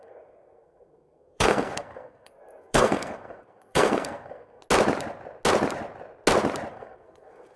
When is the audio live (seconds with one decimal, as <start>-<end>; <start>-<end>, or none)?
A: 4.6-6.7